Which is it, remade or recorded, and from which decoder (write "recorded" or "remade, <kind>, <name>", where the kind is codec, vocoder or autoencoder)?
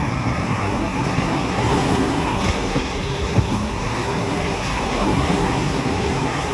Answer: remade, codec, SNAC